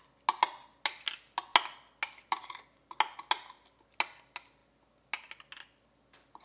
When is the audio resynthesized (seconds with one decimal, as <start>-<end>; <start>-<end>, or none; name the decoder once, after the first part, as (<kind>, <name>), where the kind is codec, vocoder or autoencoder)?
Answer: none